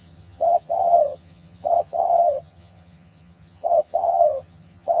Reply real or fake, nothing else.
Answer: fake